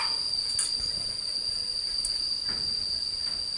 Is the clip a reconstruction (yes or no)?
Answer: no